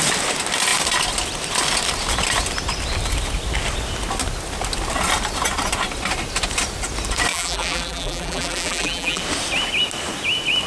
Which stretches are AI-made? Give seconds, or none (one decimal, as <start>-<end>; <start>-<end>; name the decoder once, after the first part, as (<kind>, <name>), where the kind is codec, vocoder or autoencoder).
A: 7.3-9.2 (vocoder, BigVGAN v2)